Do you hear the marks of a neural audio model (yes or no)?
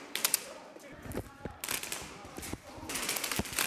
no